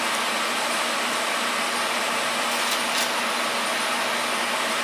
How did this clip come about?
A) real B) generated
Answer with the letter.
A